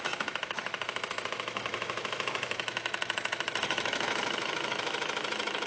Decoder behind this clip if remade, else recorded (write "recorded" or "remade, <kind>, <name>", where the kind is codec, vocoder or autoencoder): remade, autoencoder, DAC-VAE